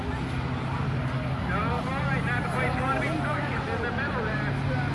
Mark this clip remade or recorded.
recorded